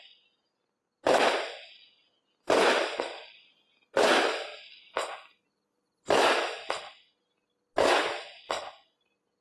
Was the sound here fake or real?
real